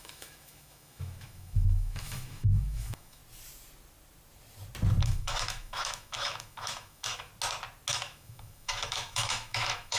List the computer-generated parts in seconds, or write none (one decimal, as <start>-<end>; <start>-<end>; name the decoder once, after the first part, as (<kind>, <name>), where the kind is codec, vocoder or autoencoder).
0.0-3.2 (autoencoder, DAC-VAE); 5.0-7.3; 7.9-10.0